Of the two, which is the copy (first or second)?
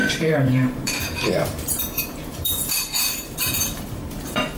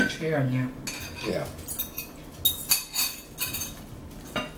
first